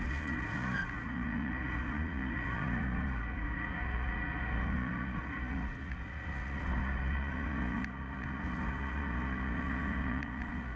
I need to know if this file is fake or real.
fake